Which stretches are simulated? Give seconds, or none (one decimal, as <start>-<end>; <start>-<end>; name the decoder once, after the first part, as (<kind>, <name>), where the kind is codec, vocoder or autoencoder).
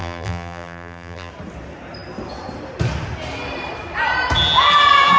0.0-1.3 (vocoder, BigVGAN v2)